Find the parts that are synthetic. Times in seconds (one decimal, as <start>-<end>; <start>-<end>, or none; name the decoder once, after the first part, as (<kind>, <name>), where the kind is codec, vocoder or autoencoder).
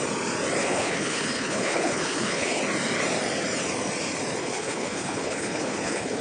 0.6-2.6 (codec, HILCodec); 4.4-6.2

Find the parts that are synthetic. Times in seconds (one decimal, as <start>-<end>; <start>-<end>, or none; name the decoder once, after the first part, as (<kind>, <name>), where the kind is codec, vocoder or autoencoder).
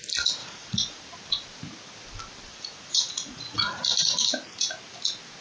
0.4-1.0 (vocoder, Vocos); 2.5-3.8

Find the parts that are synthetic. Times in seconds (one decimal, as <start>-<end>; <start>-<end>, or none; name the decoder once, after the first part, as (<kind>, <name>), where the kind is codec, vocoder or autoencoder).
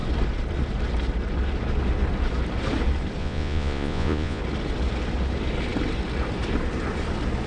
3.2-4.4 (vocoder, Vocos)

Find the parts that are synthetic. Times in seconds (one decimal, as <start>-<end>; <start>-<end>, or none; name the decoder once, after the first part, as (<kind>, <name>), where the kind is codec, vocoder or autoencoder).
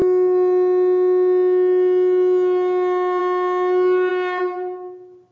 none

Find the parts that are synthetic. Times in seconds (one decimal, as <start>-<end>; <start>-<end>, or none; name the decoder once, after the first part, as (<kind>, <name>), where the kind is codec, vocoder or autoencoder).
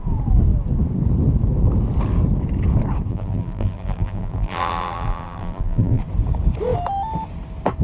3.1-6.0 (vocoder, BigVGAN v2)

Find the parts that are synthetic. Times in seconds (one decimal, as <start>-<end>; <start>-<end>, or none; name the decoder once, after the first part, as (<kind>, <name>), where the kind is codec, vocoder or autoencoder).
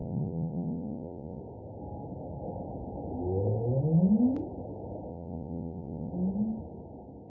0.0-1.4 (vocoder, Vocos); 5.1-6.1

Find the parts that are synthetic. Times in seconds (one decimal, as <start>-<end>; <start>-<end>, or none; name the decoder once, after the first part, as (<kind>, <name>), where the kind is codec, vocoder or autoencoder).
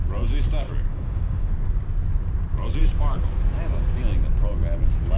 0.9-1.5 (autoencoder, DAC-VAE)